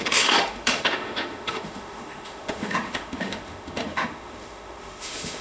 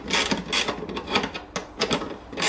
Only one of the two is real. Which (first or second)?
second